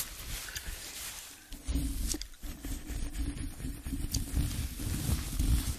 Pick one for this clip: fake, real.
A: real